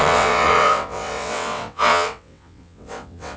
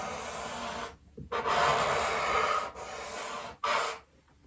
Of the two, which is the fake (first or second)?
first